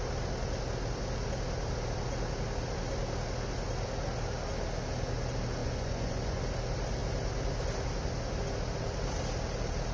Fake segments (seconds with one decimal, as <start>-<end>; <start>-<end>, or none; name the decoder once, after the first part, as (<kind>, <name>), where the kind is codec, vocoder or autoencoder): 5.6-6.4 (vocoder, Vocos)